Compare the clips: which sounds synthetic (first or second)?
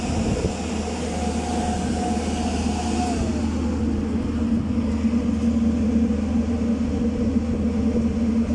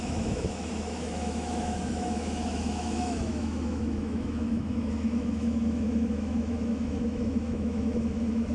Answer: second